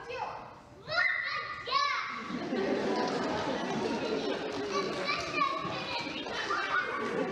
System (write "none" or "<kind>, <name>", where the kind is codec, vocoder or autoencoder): none